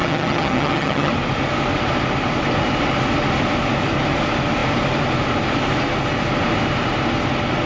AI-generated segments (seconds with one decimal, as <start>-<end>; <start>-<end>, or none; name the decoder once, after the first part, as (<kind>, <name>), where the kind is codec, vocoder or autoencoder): 0.0-1.1 (vocoder, HiFi-GAN)